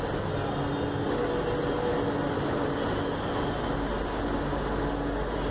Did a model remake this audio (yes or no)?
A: no